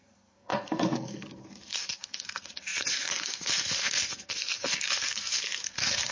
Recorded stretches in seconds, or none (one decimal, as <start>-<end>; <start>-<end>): none